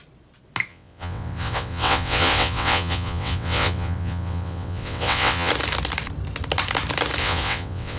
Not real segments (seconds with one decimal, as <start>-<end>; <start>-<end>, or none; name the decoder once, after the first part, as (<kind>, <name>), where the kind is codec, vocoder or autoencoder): 0.7-5.5 (vocoder, WaveNeXt); 7.2-8.0